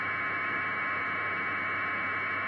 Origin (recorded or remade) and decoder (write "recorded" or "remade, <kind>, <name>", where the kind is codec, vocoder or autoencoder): recorded